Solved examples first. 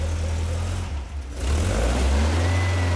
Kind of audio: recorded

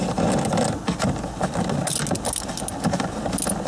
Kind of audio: recorded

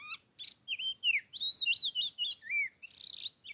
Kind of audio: recorded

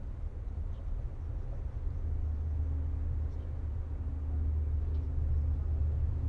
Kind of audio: recorded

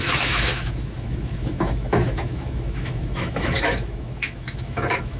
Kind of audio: remade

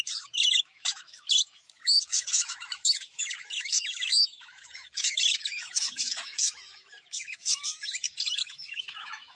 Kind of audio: remade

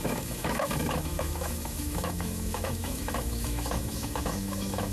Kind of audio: remade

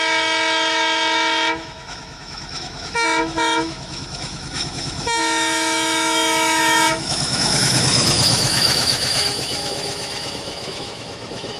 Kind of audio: remade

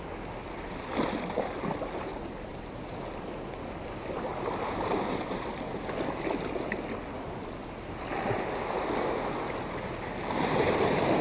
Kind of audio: recorded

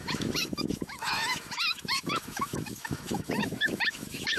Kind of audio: remade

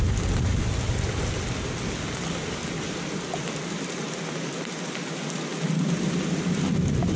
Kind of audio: recorded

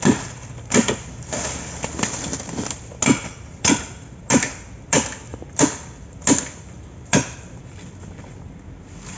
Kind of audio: recorded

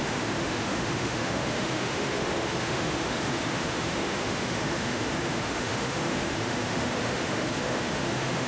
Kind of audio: remade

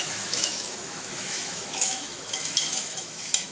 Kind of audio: remade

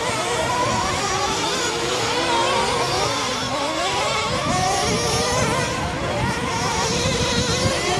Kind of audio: recorded